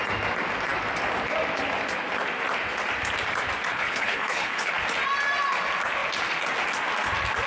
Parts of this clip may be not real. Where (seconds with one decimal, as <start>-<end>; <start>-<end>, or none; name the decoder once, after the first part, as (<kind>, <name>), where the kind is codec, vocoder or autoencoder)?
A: 3.7-4.7 (codec, HILCodec)